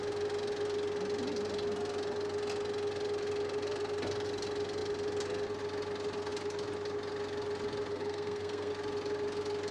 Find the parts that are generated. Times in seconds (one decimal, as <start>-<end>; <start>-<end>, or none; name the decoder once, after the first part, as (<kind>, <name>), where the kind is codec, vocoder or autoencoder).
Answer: 7.9-8.7 (codec, SNAC)